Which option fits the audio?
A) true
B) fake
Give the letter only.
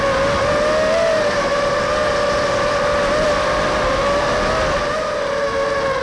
A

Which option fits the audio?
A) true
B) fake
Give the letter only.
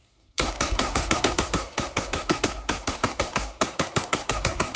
B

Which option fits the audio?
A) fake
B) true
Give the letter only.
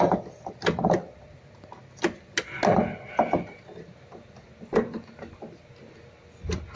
B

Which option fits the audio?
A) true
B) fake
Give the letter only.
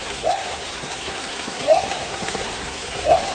B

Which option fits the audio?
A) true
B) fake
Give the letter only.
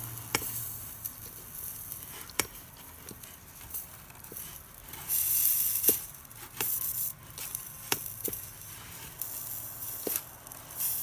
A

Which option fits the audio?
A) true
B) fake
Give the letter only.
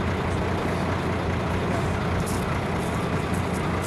A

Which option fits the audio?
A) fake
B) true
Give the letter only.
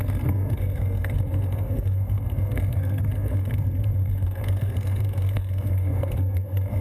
A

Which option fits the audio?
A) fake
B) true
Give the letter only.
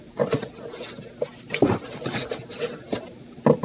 B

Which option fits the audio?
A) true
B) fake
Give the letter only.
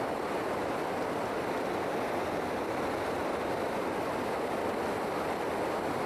A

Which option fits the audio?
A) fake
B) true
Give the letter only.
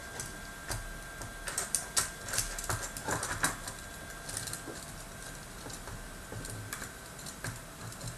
B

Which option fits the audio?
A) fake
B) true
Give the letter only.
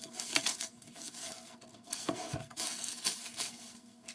A